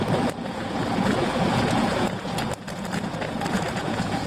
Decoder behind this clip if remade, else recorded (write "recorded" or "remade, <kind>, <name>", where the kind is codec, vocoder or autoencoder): remade, vocoder, Vocos